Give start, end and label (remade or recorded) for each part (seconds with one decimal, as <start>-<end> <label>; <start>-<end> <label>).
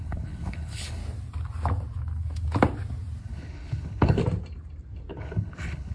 0.0-1.0 remade; 1.0-3.2 recorded; 3.2-4.2 remade; 4.2-5.2 recorded; 5.2-5.9 remade